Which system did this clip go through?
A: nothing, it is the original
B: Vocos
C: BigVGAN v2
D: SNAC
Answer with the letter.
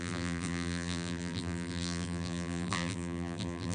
C